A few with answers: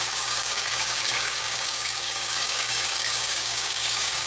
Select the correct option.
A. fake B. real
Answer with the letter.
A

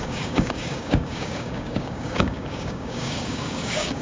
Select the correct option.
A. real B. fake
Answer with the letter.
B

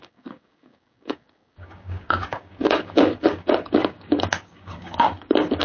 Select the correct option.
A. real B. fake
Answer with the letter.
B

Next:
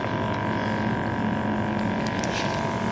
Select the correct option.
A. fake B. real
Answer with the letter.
B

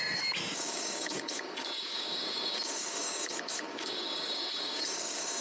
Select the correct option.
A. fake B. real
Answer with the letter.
A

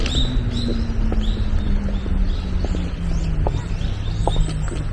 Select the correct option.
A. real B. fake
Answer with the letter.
A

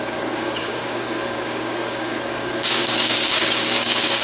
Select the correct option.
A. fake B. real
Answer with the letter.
A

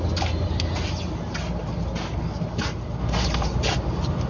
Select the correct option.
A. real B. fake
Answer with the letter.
A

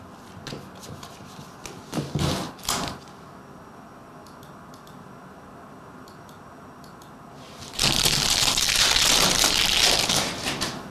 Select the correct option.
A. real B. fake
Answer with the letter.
A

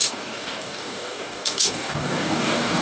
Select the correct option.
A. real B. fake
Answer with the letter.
B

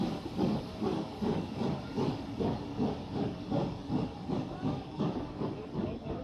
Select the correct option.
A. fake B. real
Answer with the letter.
A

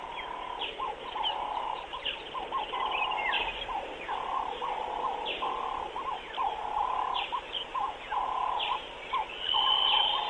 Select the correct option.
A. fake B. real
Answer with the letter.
B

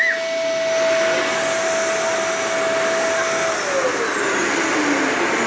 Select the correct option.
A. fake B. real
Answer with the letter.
B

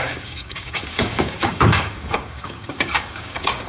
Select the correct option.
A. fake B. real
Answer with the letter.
A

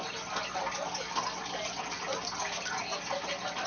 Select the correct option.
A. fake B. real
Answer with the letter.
B